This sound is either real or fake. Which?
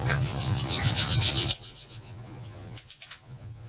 fake